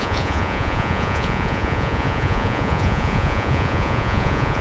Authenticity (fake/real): fake